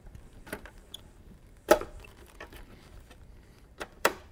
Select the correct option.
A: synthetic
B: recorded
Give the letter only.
A